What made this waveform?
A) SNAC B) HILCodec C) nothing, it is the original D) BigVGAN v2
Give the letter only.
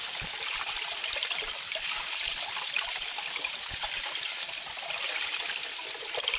D